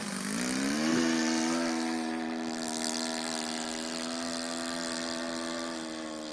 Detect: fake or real real